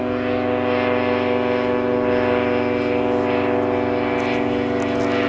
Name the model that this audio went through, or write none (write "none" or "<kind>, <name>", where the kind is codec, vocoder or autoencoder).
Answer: none